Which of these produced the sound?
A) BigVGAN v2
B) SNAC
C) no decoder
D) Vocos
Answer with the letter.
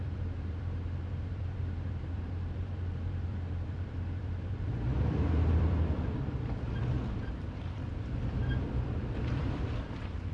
A